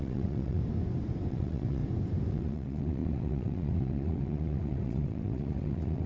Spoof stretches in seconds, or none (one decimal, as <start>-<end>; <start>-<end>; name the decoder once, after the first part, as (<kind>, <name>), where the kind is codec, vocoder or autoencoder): 0.0-0.6 (vocoder, WaveNeXt); 1.3-1.8; 2.3-6.1